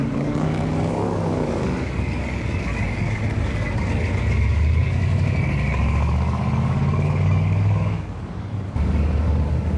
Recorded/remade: remade